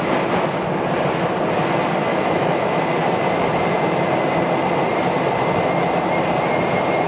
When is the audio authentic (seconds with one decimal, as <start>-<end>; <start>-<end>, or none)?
0.0-2.1; 2.8-7.1